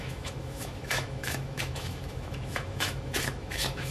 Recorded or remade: remade